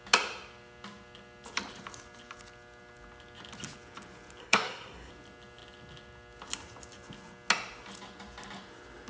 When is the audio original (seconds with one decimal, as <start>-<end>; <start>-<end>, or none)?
0.0-4.4; 5.1-9.1